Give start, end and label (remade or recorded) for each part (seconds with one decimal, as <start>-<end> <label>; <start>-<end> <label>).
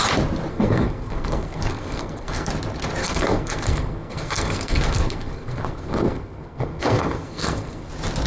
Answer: 0.0-0.5 recorded; 0.5-2.5 remade; 2.5-3.0 recorded; 3.0-7.9 remade; 7.9-8.3 recorded